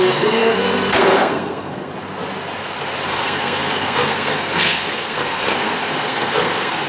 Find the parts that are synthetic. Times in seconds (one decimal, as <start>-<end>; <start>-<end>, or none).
0.0-1.9; 3.1-6.9